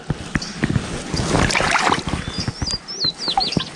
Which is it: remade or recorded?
recorded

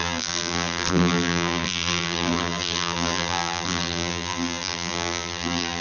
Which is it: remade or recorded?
remade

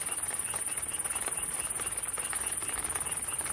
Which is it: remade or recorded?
recorded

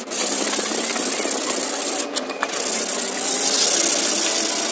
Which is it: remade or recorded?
recorded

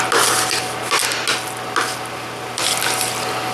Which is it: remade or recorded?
recorded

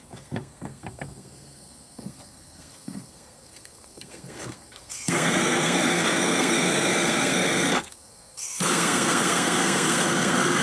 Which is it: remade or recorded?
remade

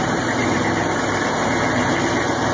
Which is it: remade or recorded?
recorded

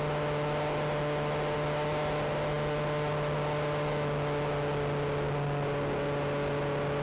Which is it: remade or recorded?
recorded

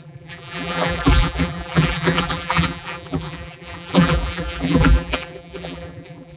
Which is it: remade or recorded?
remade